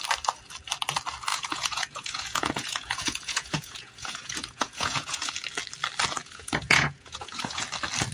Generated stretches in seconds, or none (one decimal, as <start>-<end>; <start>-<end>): 1.3-5.3; 6.2-7.6